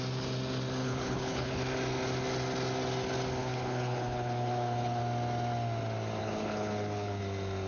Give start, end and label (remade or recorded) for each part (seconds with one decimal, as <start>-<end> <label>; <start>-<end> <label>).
0.0-0.8 recorded; 0.8-1.6 remade; 1.6-3.4 recorded; 3.4-5.0 remade; 5.0-6.2 recorded; 6.2-7.2 remade; 7.2-7.7 recorded